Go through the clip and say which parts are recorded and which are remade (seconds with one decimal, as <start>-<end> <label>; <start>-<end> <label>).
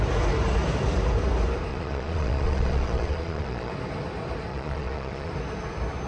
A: 0.0-1.7 recorded; 1.7-3.7 remade; 3.7-4.5 recorded; 4.5-5.3 remade; 5.3-6.1 recorded